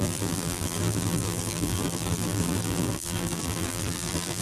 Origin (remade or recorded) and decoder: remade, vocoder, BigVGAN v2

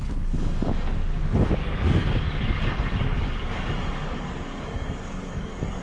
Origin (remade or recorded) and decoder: remade, codec, DAC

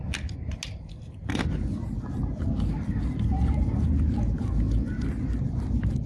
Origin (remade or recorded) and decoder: recorded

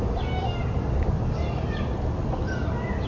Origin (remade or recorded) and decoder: recorded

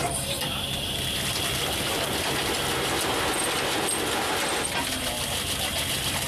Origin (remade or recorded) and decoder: recorded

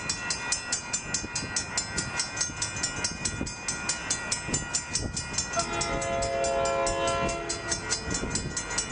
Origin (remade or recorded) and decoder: recorded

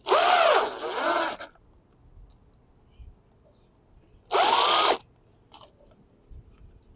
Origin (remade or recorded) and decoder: recorded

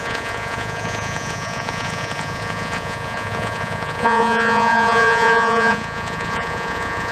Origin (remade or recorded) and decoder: remade, vocoder, Vocos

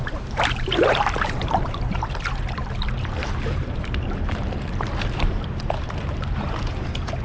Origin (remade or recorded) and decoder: remade, vocoder, BigVGAN v2